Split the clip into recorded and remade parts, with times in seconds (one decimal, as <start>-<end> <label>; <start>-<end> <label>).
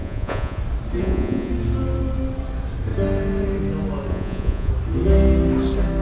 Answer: 0.0-0.6 remade; 0.6-1.0 recorded; 1.0-1.5 remade; 1.5-4.1 recorded; 4.1-4.7 remade; 4.7-6.0 recorded